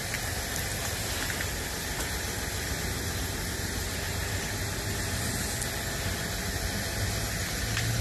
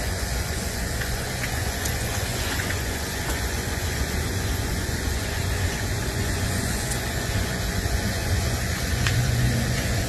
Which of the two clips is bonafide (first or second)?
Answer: first